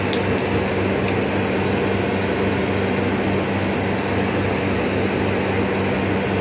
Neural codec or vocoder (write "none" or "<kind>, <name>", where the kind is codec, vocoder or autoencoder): none